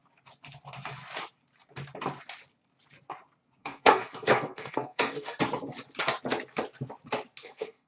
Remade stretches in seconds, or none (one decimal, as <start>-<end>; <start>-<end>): 3.6-5.4; 7.4-7.9